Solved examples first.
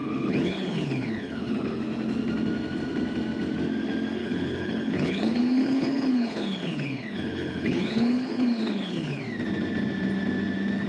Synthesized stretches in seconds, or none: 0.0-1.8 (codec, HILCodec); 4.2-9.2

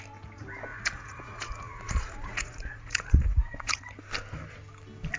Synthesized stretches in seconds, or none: 0.7-3.8 (vocoder, Vocos)

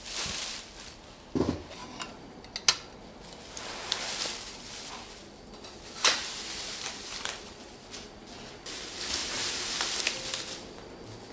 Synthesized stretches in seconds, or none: 9.2-9.8 (vocoder, BigVGAN v2)

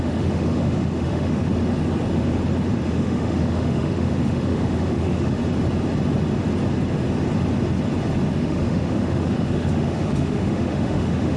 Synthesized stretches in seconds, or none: 0.0-1.5 (autoencoder, DAC-VAE); 2.9-5.4; 8.3-11.4

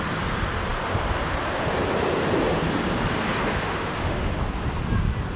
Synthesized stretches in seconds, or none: 3.4-4.4 (autoencoder, DAC-VAE)